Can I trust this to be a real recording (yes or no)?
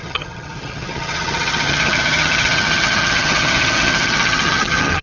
no